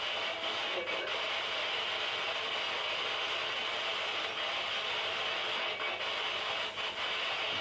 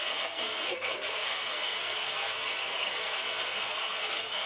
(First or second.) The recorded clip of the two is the first